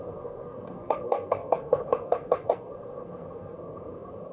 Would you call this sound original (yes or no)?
no